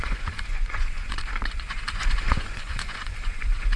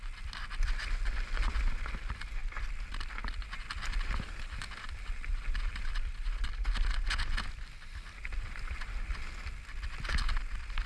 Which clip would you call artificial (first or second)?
first